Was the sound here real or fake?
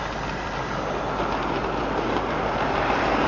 real